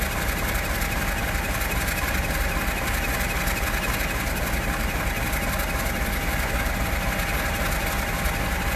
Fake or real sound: real